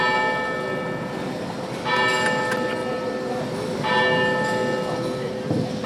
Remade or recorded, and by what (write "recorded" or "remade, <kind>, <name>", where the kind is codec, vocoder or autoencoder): recorded